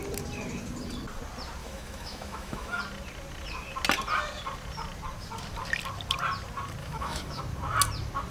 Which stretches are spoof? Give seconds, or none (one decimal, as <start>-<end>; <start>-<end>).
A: 1.6-2.8; 6.8-7.4